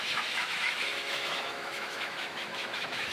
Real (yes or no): no